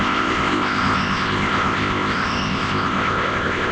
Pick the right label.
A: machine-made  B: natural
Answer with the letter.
A